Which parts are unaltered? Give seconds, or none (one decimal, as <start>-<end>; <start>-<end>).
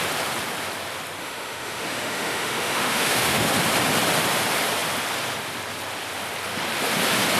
0.0-1.2; 3.5-7.4